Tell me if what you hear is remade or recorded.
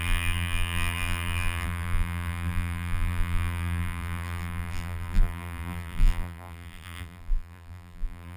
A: remade